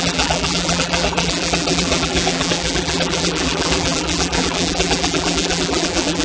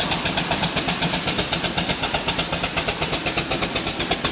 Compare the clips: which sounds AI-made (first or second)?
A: first